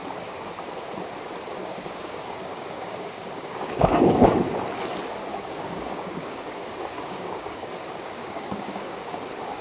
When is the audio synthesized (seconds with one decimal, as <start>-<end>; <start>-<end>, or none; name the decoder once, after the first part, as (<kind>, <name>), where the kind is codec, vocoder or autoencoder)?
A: 0.0-0.5 (codec, DAC); 1.6-4.3; 5.3-9.2